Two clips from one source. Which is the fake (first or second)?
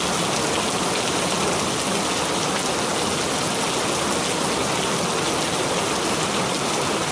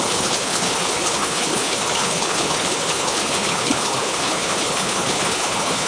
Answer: second